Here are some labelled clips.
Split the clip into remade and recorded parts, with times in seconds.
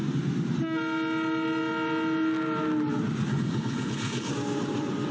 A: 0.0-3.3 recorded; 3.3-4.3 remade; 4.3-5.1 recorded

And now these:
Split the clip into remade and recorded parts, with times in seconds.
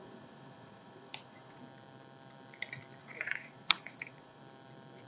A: 0.0-1.6 remade; 1.6-3.0 recorded; 3.0-4.4 remade; 4.4-5.1 recorded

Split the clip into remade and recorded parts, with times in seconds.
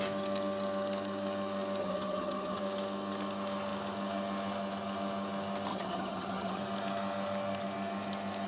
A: 0.0-1.8 recorded; 1.8-2.6 remade; 2.6-5.7 recorded; 5.7-6.6 remade; 6.6-8.5 recorded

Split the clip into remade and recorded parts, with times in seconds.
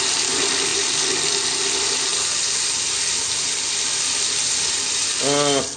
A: 0.0-5.8 recorded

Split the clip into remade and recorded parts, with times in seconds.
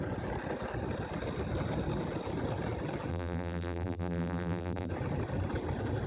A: 0.0-3.1 recorded; 3.1-4.9 remade; 4.9-6.1 recorded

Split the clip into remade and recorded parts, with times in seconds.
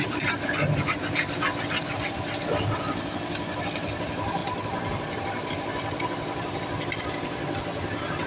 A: 0.0-8.3 recorded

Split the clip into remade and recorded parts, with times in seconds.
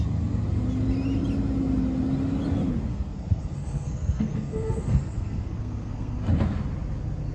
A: 0.0-2.9 recorded; 2.9-6.2 remade; 6.2-7.3 recorded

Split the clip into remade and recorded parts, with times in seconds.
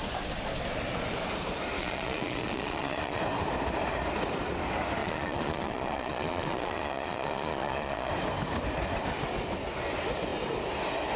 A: 0.0-1.8 recorded; 1.8-3.2 remade; 3.2-5.0 recorded; 5.0-8.1 remade; 8.1-11.2 recorded